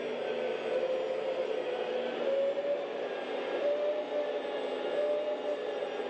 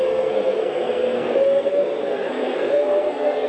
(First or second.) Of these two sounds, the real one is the first